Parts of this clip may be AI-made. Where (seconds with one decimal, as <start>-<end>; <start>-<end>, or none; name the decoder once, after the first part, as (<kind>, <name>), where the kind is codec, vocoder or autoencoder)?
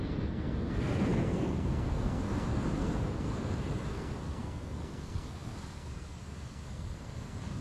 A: 0.0-7.6 (codec, SNAC)